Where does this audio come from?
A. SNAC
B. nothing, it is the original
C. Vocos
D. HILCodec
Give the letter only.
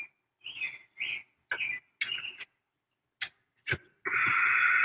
B